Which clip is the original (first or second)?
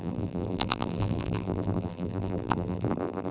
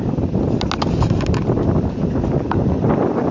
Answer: second